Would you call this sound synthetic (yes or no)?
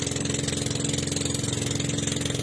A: no